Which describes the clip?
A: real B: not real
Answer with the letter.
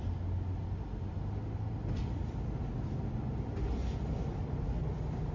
A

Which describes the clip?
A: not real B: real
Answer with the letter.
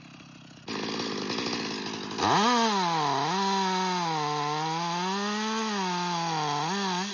B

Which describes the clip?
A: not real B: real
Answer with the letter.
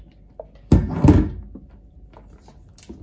B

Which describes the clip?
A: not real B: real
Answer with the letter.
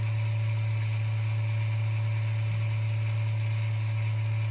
B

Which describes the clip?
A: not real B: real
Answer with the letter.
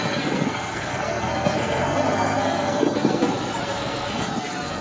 A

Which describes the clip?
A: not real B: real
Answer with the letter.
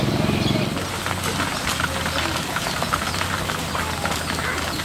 B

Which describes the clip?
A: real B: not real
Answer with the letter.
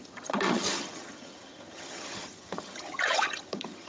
B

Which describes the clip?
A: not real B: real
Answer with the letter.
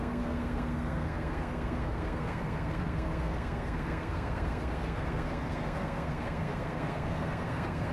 A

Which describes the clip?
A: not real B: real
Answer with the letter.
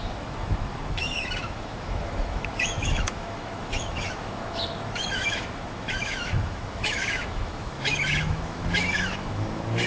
A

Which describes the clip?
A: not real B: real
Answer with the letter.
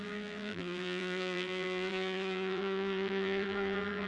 A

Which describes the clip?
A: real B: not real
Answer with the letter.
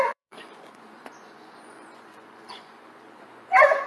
B